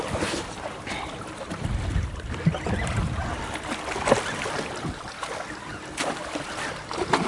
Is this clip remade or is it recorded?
recorded